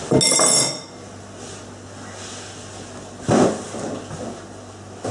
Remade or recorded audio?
recorded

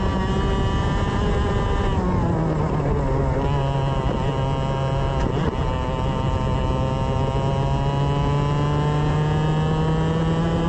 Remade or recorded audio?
recorded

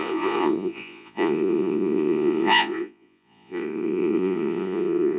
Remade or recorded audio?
remade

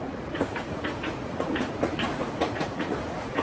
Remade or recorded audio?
remade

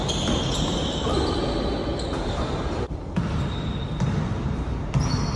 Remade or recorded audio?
recorded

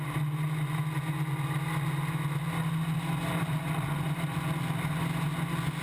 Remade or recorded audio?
recorded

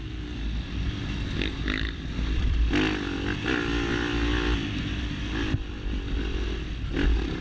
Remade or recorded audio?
recorded